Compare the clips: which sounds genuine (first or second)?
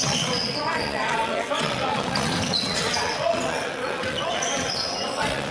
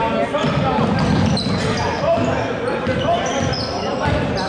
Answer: second